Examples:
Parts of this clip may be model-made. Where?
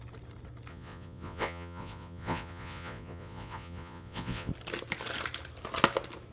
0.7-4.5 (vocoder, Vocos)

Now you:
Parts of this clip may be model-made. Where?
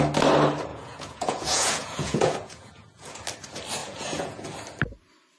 0.7-3.2 (vocoder, Vocos); 3.8-4.5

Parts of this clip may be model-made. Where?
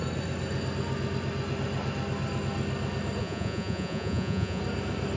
3.2-4.6 (vocoder, Vocos)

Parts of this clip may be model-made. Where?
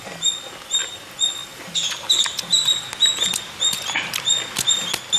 none